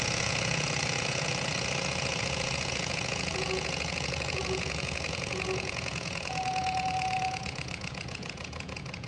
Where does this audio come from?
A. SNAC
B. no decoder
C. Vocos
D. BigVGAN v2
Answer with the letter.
C